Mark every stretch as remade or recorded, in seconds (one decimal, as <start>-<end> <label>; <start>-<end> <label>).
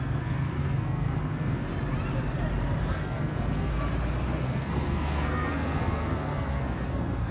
0.0-1.7 remade; 1.7-2.9 recorded; 2.9-3.7 remade; 3.7-4.3 recorded; 4.3-7.3 remade